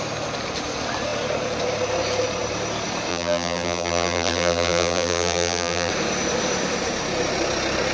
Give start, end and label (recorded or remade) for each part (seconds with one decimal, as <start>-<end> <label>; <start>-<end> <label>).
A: 0.0-3.1 recorded; 3.1-5.9 remade; 5.9-7.9 recorded